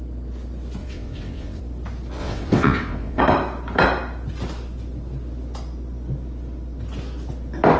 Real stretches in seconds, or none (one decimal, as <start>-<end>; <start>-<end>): 0.0-0.8; 1.6-2.2; 3.2-7.8